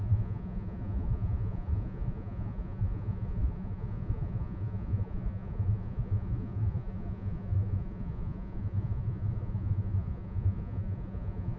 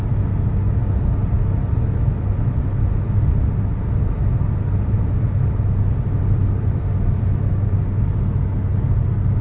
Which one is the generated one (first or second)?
first